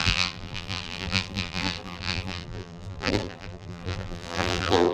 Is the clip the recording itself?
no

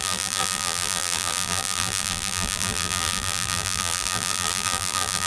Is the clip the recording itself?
no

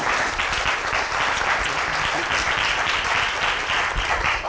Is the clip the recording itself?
yes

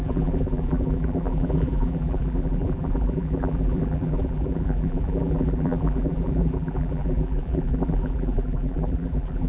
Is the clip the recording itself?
no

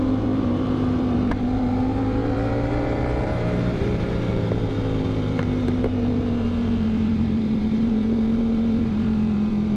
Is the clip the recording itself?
no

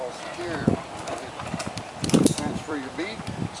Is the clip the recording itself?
no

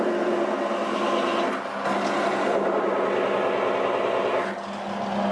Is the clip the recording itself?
yes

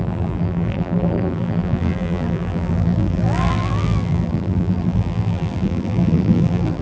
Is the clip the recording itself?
no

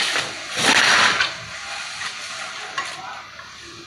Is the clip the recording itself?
yes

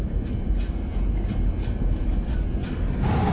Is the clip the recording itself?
yes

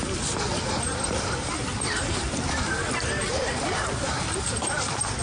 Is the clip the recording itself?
no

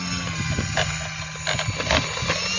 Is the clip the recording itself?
yes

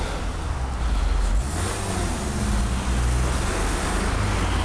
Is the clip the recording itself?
yes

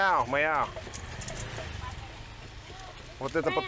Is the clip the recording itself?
yes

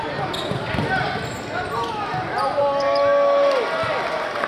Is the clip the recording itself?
yes